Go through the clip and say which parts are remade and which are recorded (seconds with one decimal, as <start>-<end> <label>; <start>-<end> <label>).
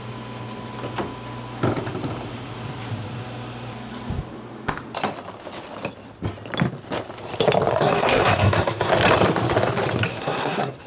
0.0-7.7 recorded; 7.7-8.9 remade; 8.9-10.1 recorded; 10.1-10.9 remade